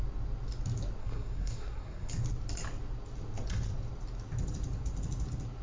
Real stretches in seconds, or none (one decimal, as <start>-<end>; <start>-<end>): 0.0-1.0; 2.1-5.6